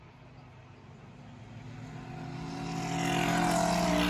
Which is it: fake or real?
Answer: real